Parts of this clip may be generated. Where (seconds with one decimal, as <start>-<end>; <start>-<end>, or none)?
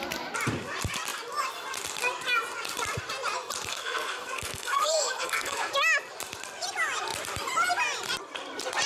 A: 3.7-5.7